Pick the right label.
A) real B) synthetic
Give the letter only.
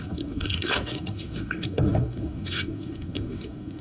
B